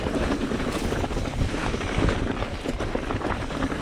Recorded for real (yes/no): yes